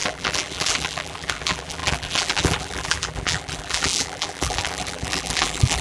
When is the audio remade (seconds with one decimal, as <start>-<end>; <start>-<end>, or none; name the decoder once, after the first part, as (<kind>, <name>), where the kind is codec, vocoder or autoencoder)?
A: 0.0-5.8 (vocoder, BigVGAN v2)